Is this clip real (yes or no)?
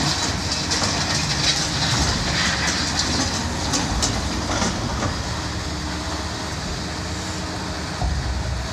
yes